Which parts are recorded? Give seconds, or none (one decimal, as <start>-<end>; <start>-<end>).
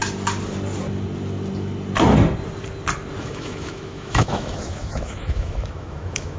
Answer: 0.0-3.2